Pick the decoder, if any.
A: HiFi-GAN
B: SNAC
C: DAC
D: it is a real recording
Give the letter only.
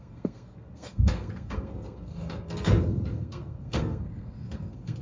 B